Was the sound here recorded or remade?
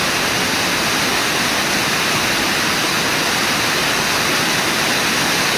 recorded